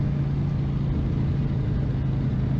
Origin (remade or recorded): recorded